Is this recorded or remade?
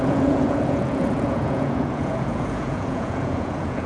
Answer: remade